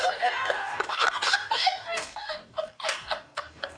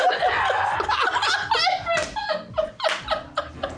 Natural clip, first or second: second